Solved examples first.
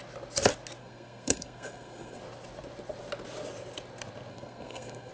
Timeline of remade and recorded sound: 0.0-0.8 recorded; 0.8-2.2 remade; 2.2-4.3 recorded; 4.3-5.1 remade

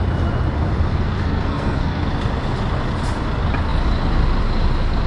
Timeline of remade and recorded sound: 0.0-0.9 recorded; 0.9-2.1 remade; 2.1-5.1 recorded

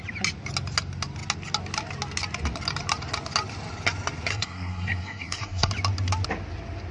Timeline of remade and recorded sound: 0.0-4.3 recorded; 4.3-5.7 remade; 5.7-6.9 recorded

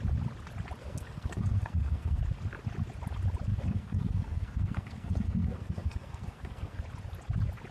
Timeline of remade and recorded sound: 0.0-0.8 recorded; 0.8-2.2 remade; 2.2-3.5 recorded; 3.5-6.8 remade; 6.8-7.7 recorded

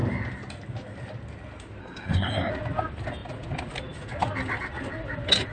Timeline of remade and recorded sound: 0.0-1.8 recorded; 1.8-2.5 remade; 2.5-5.5 recorded

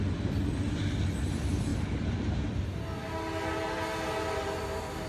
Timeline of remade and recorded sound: 0.0-5.1 recorded